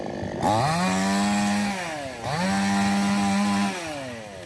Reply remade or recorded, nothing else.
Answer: recorded